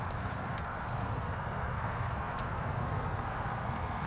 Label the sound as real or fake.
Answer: fake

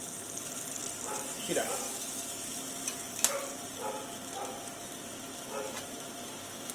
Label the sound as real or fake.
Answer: real